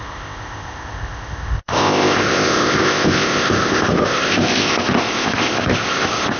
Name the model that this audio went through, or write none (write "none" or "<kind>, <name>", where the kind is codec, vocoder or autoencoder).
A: codec, ZipCodec